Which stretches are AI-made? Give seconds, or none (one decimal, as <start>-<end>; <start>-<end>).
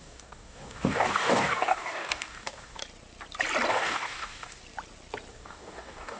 0.0-2.8; 3.7-4.6; 5.3-6.2